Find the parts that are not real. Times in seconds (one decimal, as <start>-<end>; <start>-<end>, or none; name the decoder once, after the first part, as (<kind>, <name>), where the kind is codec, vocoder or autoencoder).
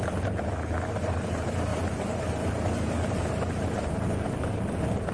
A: 0.0-5.1 (vocoder, BigVGAN v2)